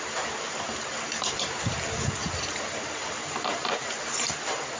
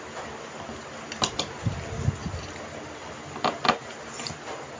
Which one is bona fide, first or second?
second